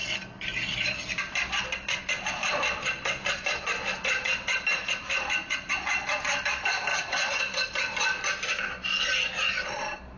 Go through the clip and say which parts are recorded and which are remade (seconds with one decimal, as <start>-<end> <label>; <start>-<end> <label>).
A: 0.0-6.9 recorded; 6.9-7.4 remade; 7.4-10.2 recorded